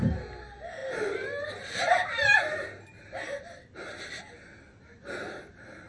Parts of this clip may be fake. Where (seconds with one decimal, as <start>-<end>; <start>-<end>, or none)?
none